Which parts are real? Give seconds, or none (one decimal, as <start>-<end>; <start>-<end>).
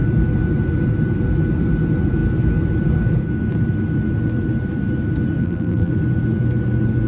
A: 0.0-5.4; 5.9-7.1